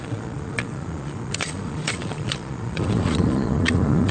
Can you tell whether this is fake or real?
fake